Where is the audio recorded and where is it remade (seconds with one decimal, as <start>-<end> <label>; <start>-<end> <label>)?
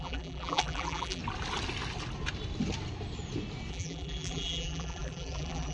0.0-1.2 remade; 1.2-3.7 recorded; 3.7-5.7 remade